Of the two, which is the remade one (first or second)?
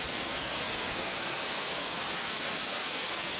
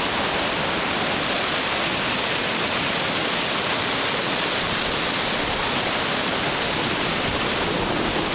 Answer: first